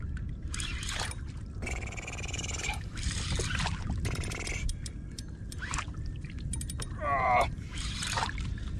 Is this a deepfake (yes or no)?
no